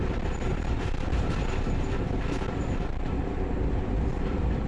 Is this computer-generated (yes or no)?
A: yes